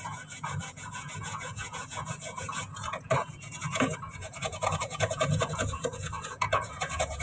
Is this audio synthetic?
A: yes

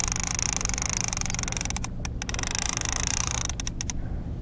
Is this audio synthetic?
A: no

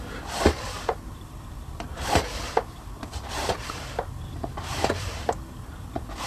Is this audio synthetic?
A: yes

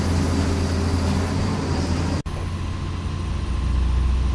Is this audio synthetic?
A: no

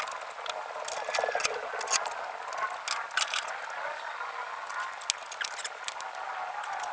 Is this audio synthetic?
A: no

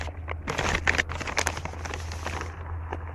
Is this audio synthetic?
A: no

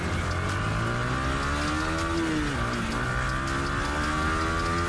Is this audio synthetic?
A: no